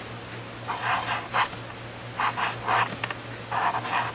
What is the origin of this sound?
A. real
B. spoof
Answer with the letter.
A